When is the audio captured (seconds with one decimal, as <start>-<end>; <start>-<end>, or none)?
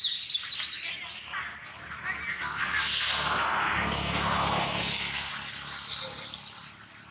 0.0-2.3; 5.3-7.1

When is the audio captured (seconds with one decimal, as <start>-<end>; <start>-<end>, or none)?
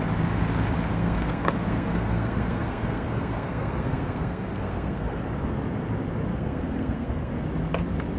0.0-0.9; 5.2-6.3; 7.3-8.2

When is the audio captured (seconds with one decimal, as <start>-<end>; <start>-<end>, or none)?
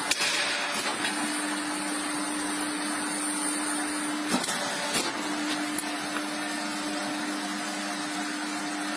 0.0-9.0